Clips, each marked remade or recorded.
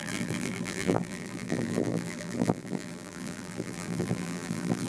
remade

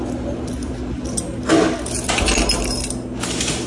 recorded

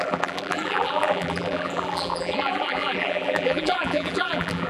remade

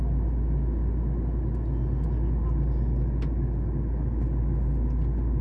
recorded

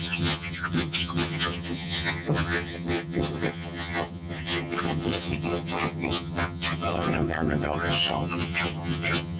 remade